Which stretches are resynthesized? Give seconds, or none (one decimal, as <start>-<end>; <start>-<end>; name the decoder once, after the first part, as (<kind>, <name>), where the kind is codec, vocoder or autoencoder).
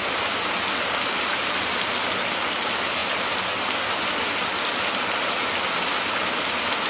none